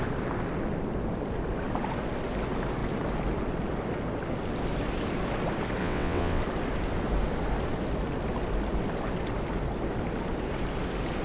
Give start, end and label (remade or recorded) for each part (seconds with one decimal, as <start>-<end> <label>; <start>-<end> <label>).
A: 0.0-5.8 recorded; 5.8-6.4 remade; 6.4-11.2 recorded